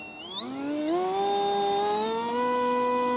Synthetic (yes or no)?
no